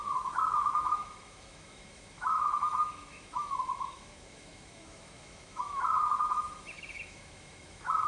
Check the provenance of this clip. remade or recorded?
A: remade